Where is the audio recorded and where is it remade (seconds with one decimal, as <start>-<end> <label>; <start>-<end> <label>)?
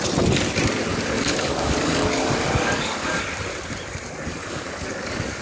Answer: 0.0-0.9 recorded; 0.9-3.2 remade; 3.2-4.3 recorded; 4.3-5.4 remade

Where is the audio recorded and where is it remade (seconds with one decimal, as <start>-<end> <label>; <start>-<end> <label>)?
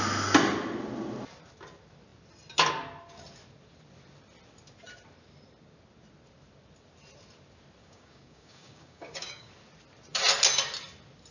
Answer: 0.0-7.8 recorded; 7.8-9.5 remade; 9.5-11.3 recorded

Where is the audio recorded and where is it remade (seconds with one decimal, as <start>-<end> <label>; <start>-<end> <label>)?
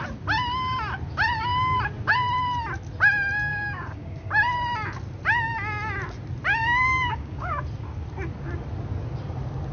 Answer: 0.0-3.5 recorded; 3.5-4.3 remade; 4.3-6.6 recorded; 6.6-7.6 remade; 7.6-9.7 recorded